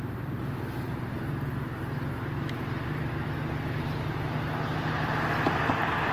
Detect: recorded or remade recorded